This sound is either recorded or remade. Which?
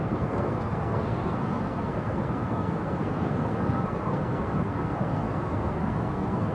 remade